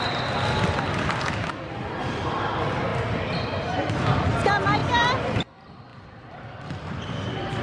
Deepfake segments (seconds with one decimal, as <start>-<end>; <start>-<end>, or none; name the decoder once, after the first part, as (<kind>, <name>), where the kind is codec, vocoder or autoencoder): 2.9-3.9 (vocoder, BigVGAN v2); 4.8-5.4